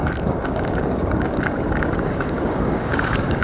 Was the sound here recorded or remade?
remade